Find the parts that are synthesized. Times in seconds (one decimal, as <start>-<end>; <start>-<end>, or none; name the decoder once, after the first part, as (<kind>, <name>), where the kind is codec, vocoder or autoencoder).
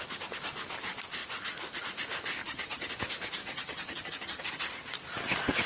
2.4-2.9 (vocoder, HiFi-GAN); 3.4-4.5